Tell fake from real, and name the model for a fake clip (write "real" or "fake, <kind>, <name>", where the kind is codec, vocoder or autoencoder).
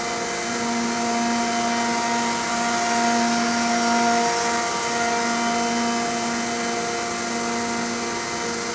real